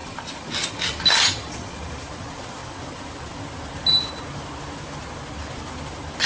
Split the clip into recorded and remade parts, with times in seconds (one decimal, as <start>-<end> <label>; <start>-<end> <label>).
0.0-6.3 recorded